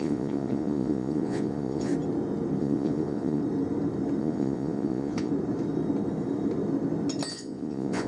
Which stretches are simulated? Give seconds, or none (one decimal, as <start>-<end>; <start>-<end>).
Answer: 0.0-1.9; 2.6-3.4; 4.2-5.3; 7.3-8.1